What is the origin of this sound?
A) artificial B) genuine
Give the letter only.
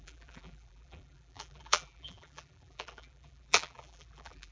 A